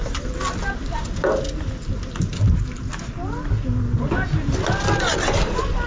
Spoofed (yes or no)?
no